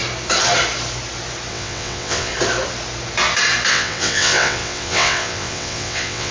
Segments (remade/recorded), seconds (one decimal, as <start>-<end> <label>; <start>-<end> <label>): 0.0-1.5 recorded; 1.5-2.3 remade; 2.3-3.7 recorded; 3.7-6.3 remade